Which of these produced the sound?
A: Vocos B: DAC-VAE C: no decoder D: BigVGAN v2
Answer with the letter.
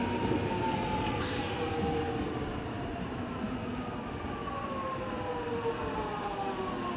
C